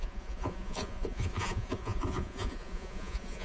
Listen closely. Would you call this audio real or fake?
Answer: fake